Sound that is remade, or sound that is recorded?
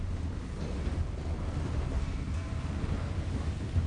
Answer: recorded